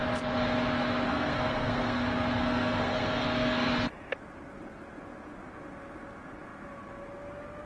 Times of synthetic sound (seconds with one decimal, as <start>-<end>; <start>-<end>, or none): 1.1-3.7